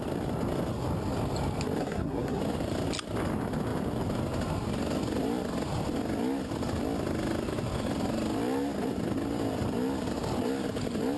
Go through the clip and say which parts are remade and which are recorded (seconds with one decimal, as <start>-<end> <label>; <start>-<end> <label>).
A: 0.0-1.8 recorded; 1.8-2.4 remade; 2.4-11.2 recorded